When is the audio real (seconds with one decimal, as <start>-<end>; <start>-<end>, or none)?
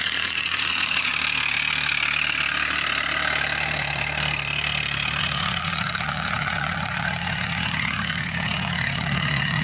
1.1-5.2